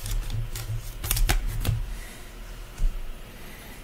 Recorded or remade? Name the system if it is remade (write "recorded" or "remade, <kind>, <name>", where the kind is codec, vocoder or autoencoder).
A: recorded